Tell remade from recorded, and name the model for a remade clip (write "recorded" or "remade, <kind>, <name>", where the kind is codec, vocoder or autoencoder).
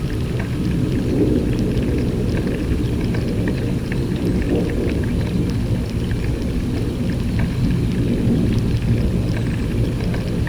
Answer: recorded